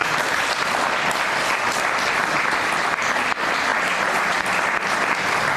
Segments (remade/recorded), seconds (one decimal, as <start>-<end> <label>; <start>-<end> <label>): 0.0-0.5 remade; 0.5-5.6 recorded